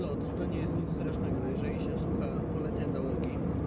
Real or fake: real